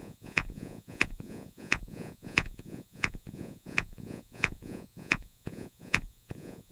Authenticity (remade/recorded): remade